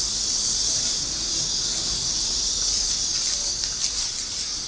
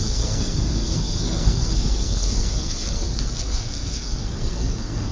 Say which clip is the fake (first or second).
second